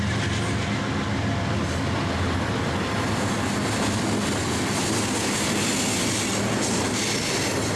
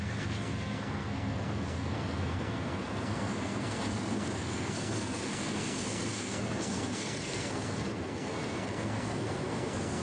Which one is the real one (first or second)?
first